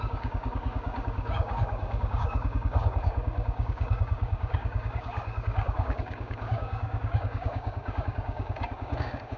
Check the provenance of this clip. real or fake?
fake